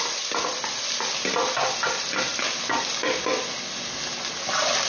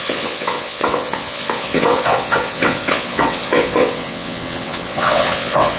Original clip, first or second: first